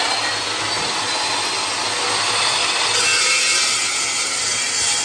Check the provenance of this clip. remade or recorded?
recorded